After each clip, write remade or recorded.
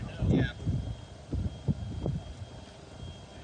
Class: recorded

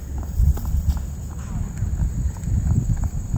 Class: recorded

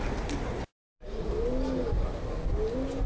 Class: recorded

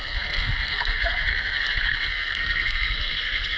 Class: remade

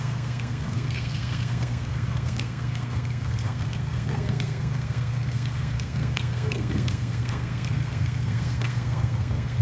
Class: remade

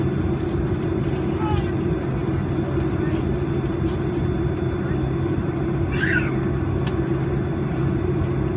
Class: recorded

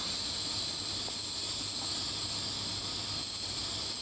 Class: recorded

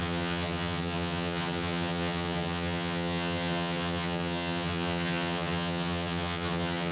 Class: remade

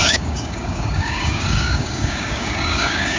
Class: remade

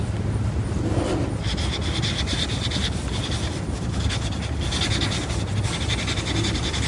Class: recorded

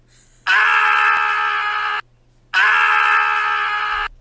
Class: recorded